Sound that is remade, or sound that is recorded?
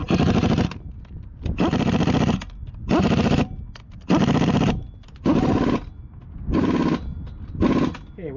recorded